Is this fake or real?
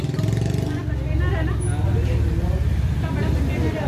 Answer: real